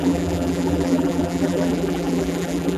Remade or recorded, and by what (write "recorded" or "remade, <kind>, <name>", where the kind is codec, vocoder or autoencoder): remade, vocoder, BigVGAN v2